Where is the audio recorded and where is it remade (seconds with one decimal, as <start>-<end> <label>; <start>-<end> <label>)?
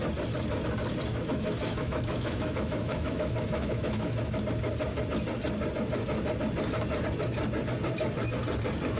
0.0-1.1 recorded; 1.1-4.4 remade; 4.4-9.0 recorded